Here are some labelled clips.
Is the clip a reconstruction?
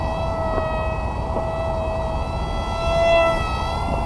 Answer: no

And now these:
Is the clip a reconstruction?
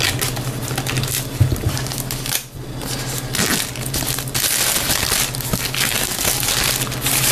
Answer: no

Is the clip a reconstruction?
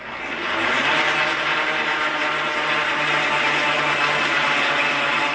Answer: no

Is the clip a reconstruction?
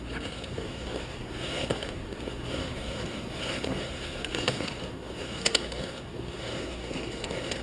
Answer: yes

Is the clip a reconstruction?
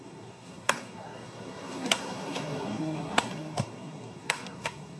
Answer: yes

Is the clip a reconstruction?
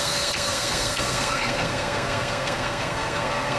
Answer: yes